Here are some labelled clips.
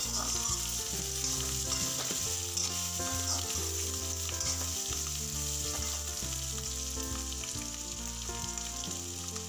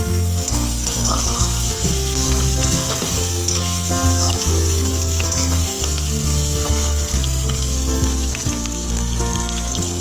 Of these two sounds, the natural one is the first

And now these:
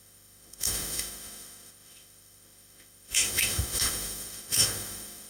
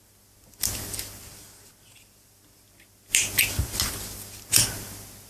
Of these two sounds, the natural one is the second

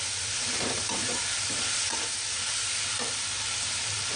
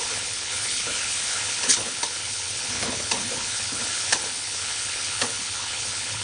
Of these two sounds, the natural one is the first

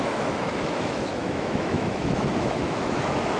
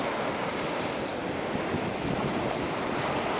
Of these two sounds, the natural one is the second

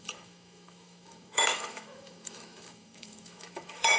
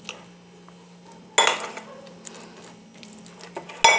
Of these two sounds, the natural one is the second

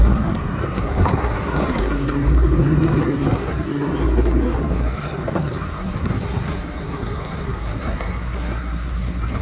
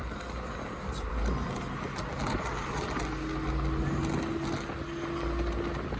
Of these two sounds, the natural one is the second